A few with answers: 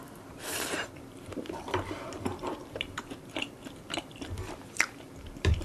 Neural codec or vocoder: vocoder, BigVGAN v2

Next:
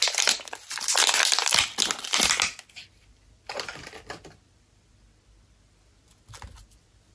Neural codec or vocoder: vocoder, BigVGAN v2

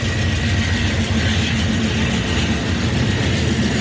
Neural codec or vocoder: none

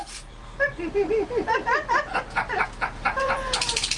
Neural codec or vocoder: vocoder, BigVGAN v2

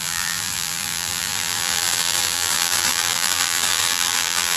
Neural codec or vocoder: vocoder, BigVGAN v2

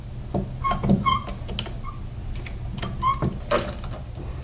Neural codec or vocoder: none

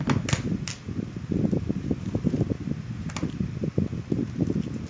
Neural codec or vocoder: none